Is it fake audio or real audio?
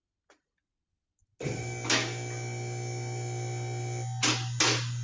real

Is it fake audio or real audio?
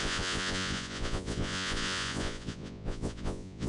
fake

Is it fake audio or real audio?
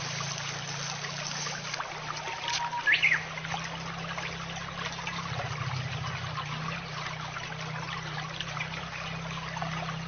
real